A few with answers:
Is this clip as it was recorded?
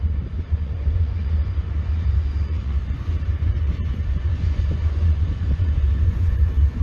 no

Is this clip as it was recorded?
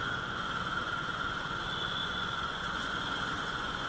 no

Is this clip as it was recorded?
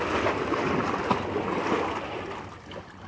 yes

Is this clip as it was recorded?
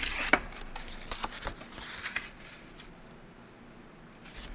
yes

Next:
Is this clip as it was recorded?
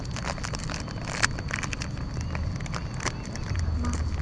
yes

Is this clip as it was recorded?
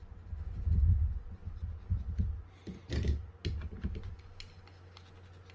yes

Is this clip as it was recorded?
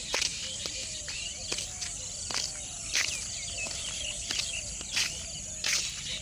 yes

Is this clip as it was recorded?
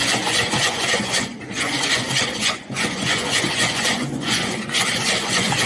no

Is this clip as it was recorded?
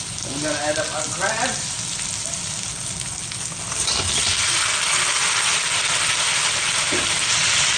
yes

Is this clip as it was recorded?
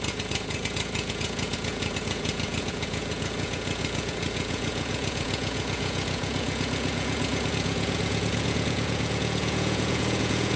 no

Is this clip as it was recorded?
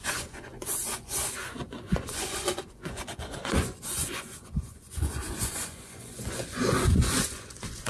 no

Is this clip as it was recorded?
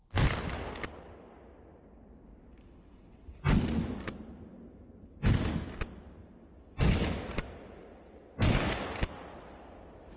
yes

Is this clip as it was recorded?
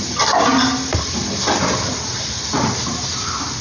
yes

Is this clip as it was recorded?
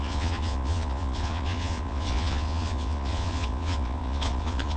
no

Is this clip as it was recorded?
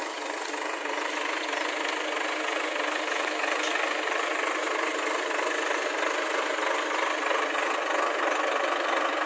yes